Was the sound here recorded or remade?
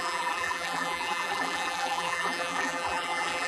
remade